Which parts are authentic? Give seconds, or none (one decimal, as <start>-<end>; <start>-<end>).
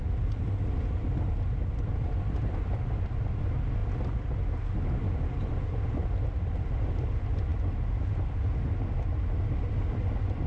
0.0-10.5